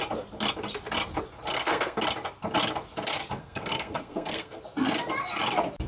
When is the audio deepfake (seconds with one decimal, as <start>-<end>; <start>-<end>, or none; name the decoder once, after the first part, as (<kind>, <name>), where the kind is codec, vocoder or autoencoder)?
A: 1.5-2.0 (codec, SNAC); 3.4-4.6